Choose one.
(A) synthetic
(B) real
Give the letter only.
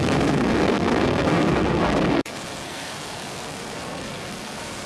A